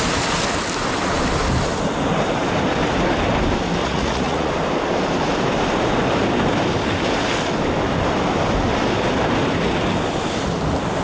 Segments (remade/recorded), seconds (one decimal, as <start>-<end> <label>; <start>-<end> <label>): 0.0-3.8 recorded; 3.8-4.5 remade; 4.5-11.0 recorded